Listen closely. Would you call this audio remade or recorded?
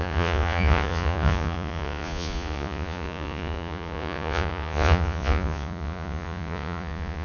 remade